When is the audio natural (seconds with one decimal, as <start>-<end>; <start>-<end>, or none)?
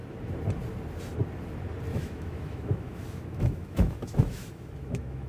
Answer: 0.0-1.9